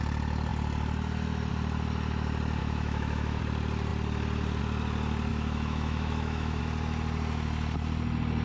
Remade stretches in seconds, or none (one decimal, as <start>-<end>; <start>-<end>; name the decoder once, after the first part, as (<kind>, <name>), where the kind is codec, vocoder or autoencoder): 2.6-3.4 (autoencoder, DAC-VAE); 5.3-6.6